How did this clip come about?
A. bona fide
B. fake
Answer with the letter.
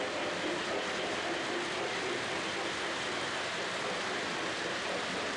A